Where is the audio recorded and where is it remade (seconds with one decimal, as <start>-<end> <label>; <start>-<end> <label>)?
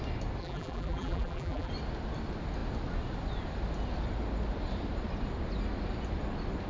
0.0-0.4 recorded; 0.4-1.7 remade; 1.7-6.7 recorded